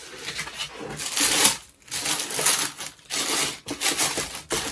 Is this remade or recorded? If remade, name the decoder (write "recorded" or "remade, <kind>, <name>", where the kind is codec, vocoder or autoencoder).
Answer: recorded